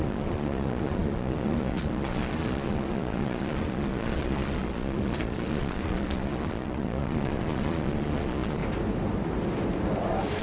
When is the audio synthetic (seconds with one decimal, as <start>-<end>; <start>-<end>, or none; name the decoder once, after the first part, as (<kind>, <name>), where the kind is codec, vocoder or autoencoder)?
0.0-8.6 (vocoder, Vocos)